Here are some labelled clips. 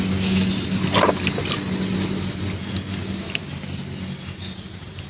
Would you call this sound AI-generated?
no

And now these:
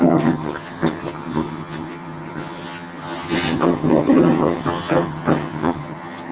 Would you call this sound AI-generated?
yes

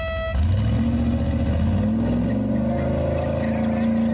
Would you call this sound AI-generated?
no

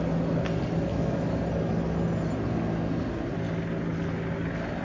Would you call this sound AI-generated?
no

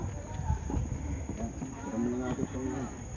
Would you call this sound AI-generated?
no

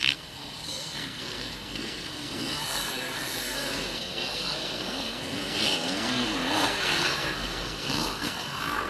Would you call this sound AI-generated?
yes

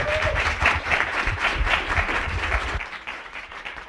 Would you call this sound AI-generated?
yes